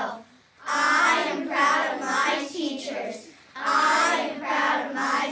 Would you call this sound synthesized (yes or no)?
no